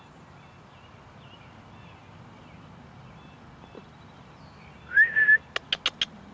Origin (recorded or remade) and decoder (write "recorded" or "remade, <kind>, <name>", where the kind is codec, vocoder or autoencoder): recorded